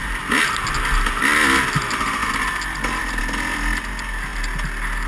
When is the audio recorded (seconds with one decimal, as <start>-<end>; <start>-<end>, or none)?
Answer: 0.0-5.1